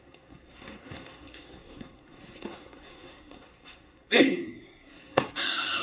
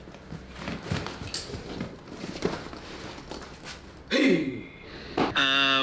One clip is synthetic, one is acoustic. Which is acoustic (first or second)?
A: second